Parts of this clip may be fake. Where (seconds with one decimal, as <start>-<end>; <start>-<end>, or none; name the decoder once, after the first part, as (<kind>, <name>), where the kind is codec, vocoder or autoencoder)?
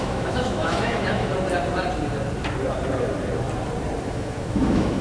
0.0-1.3 (autoencoder, DAC-VAE); 4.0-5.0